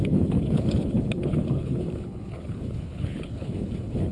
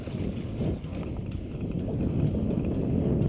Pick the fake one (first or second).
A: first